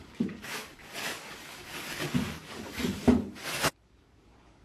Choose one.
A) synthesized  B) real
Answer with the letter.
A